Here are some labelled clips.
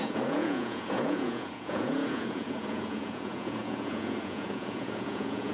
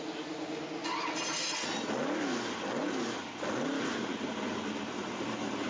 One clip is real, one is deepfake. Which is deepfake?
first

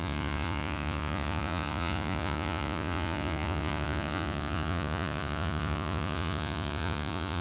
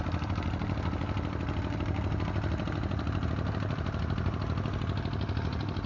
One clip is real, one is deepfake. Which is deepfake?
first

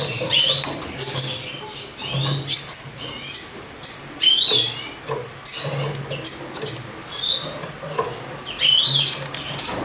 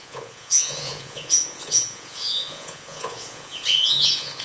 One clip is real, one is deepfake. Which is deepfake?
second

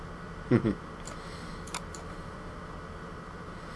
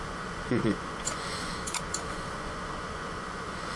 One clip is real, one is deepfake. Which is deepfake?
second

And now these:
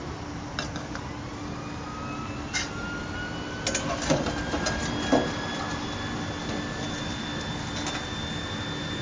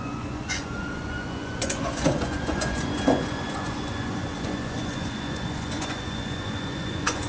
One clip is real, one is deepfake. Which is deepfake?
second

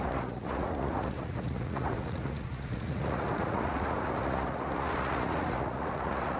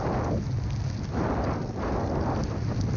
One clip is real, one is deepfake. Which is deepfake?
first